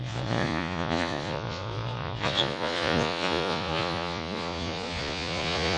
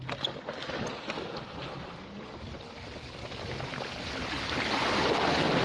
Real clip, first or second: second